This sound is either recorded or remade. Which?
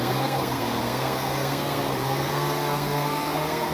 remade